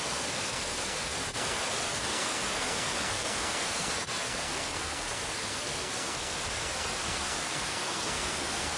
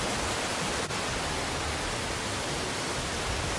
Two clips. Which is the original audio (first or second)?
second